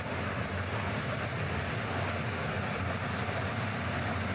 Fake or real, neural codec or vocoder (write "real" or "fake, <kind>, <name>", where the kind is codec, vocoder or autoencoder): real